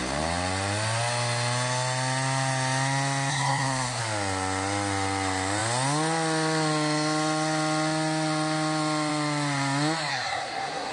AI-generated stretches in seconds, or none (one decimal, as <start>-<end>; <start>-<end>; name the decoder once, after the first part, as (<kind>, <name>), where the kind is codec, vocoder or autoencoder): 3.3-4.0 (codec, SNAC); 10.1-10.9